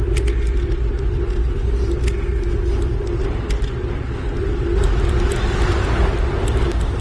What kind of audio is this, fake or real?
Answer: real